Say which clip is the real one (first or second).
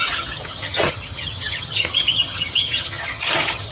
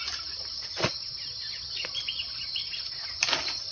second